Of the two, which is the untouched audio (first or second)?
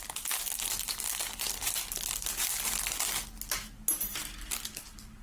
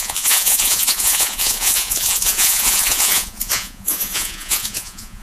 first